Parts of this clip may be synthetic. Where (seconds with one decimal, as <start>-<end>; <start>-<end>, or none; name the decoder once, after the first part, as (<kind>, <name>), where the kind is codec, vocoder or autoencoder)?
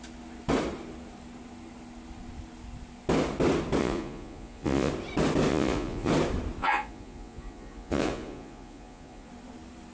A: 3.8-4.9 (vocoder, Vocos); 5.5-6.1; 6.6-9.3